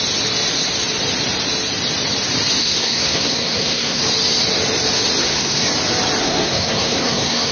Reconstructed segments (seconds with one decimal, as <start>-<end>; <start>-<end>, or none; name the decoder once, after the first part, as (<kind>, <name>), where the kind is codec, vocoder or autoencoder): 2.6-4.0 (codec, SNAC); 5.2-5.7; 6.2-7.5